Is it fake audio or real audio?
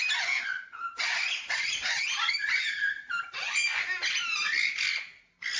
real